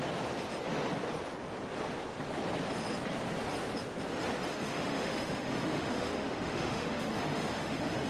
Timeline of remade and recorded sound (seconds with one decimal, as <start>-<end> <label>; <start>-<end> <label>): 0.0-4.5 recorded; 4.5-8.1 remade